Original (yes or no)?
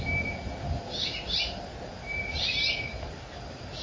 yes